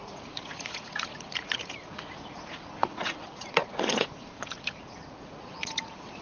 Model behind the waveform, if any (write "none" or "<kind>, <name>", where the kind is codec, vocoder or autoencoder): vocoder, Vocos